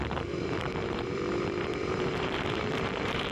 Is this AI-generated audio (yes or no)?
yes